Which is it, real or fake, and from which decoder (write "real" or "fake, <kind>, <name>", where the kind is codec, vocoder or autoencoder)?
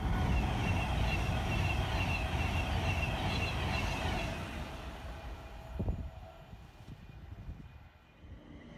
real